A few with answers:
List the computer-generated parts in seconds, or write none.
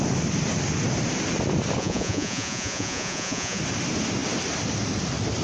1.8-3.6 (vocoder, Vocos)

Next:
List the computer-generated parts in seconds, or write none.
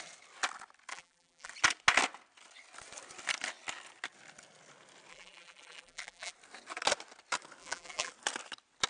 0.9-1.5 (vocoder, BigVGAN v2); 5.1-6.3; 7.6-8.1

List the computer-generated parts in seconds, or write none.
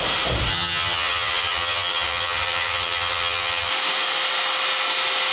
0.5-3.7 (vocoder, HiFi-GAN)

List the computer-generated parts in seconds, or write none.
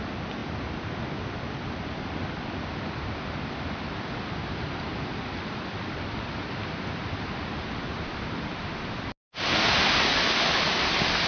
none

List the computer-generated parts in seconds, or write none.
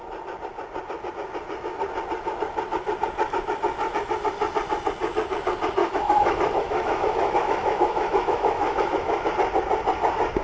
5.8-9.3 (autoencoder, DAC-VAE)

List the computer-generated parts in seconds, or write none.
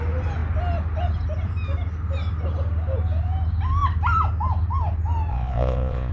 5.3-6.1 (vocoder, Vocos)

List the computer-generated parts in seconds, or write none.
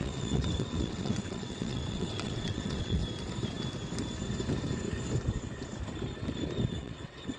0.0-3.0 (vocoder, WaveNeXt); 6.7-7.4